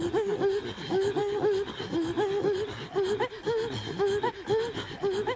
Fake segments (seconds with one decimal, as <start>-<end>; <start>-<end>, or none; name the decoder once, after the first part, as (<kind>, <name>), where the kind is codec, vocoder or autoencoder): none